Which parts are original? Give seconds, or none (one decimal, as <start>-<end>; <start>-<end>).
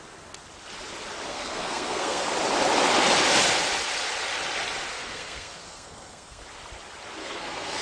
0.0-1.3; 2.3-4.9; 6.4-7.2